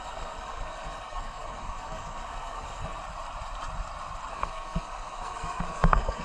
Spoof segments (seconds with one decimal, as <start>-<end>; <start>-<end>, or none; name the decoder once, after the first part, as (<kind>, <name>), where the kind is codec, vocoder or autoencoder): 0.0-3.0 (codec, SNAC); 4.3-6.2